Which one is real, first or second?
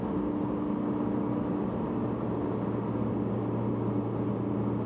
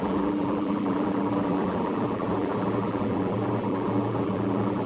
first